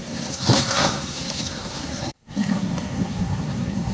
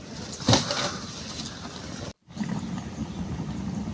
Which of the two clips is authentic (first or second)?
second